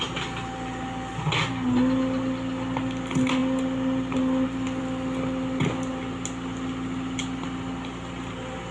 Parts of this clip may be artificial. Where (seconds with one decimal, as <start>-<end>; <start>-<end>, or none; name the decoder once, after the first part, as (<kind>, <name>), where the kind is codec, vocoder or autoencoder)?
none